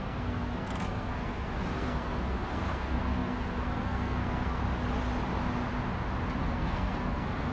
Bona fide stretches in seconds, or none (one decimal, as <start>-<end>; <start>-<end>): 4.6-6.4